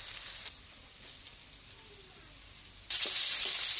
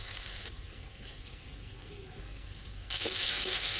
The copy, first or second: second